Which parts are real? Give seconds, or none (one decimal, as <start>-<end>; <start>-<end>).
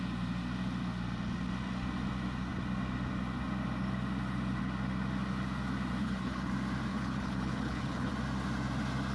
0.0-6.0; 6.5-6.9; 8.1-9.1